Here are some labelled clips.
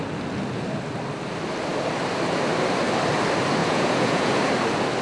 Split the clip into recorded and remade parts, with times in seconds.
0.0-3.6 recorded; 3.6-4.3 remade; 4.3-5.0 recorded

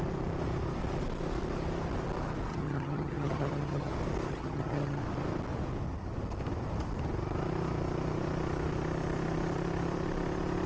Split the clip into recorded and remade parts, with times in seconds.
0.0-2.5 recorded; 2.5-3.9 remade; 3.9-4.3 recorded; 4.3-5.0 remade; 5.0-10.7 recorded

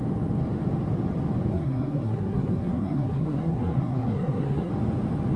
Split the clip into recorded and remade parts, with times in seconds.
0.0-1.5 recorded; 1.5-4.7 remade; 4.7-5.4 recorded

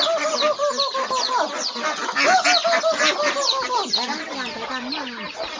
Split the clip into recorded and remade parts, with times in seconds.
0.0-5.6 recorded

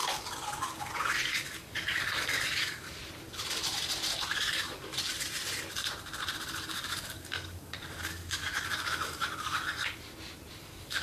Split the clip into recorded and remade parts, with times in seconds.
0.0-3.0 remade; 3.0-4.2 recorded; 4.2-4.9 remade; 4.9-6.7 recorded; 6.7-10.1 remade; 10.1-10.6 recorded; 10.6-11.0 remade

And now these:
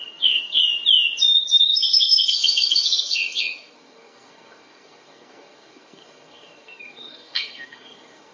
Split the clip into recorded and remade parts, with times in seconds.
0.0-0.6 remade; 0.6-1.4 recorded; 1.4-8.3 remade